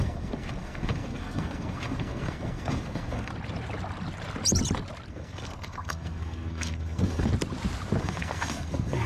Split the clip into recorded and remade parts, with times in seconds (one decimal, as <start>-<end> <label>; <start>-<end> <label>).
0.0-3.3 remade; 3.3-5.1 recorded; 5.1-7.3 remade; 7.3-8.0 recorded; 8.0-9.1 remade